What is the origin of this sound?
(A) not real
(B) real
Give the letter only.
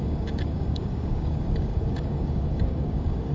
A